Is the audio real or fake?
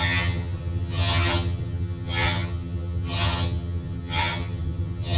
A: fake